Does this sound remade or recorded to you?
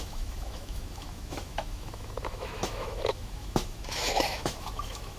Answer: remade